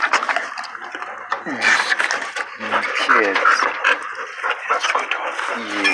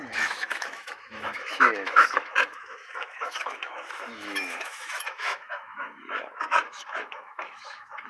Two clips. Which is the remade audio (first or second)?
second